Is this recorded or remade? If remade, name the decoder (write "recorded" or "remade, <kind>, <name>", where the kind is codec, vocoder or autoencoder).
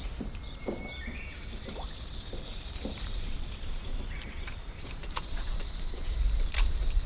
remade, vocoder, BigVGAN v2